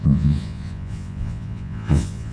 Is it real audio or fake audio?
fake